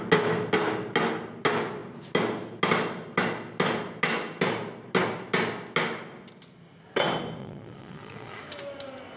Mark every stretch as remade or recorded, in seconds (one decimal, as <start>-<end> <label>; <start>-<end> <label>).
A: 0.0-7.4 recorded; 7.4-8.4 remade; 8.4-9.2 recorded